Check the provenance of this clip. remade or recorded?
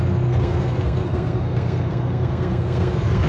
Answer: remade